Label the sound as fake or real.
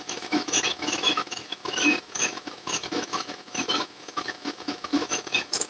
fake